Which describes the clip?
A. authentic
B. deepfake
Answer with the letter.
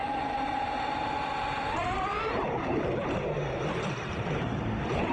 B